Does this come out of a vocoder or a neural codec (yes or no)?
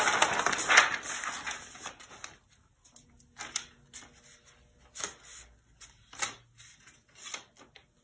no